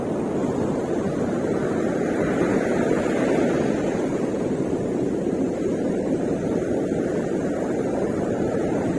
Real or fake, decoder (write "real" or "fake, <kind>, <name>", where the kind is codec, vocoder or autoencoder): fake, vocoder, BigVGAN v2